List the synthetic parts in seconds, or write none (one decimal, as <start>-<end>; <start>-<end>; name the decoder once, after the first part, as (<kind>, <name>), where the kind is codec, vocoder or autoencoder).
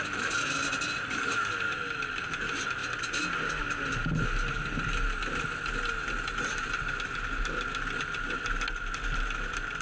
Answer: none